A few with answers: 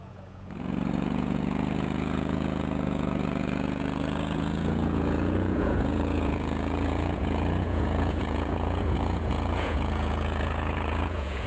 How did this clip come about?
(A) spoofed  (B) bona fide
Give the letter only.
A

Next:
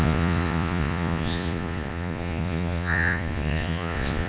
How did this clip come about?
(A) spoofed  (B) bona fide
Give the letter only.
A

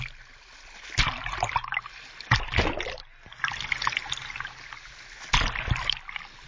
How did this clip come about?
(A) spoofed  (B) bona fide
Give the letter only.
B